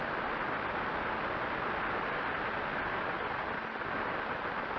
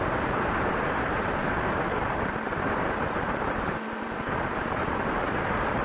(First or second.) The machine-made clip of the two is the second